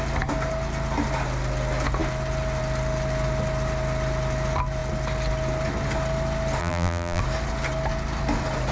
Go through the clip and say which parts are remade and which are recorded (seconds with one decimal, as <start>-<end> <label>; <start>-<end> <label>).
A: 0.0-6.6 recorded; 6.6-7.2 remade; 7.2-8.7 recorded